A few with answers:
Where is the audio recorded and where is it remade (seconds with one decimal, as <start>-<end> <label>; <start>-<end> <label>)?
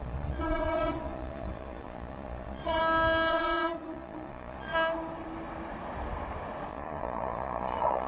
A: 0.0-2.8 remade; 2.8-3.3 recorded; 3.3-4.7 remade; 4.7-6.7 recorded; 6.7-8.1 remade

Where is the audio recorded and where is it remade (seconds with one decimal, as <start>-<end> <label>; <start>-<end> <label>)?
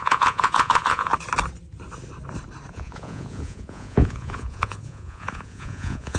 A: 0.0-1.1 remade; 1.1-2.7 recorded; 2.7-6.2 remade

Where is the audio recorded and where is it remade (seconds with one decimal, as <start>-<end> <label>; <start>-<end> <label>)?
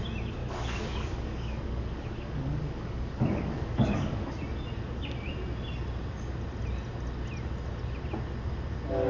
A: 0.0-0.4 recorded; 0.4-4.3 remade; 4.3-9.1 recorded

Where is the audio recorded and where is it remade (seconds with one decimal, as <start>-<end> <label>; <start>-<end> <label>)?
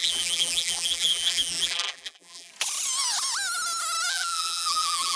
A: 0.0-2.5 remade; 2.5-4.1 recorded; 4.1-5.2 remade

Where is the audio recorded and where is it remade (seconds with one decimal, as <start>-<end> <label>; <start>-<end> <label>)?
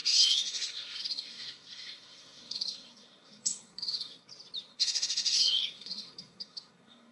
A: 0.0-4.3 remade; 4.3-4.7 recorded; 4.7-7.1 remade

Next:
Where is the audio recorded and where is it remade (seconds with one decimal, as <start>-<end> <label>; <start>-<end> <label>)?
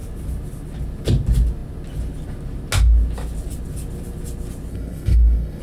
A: 0.0-4.7 recorded; 4.7-5.6 remade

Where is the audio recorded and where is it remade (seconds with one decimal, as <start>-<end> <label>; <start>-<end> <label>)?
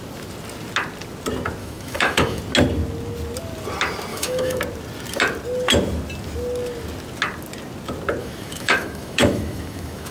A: 0.0-1.6 recorded; 1.6-2.4 remade; 2.4-4.1 recorded; 4.1-4.6 remade; 4.6-8.2 recorded; 8.2-10.1 remade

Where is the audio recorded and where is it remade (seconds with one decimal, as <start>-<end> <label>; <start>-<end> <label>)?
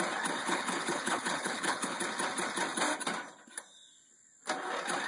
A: 0.0-0.4 recorded; 0.4-2.0 remade; 2.0-5.1 recorded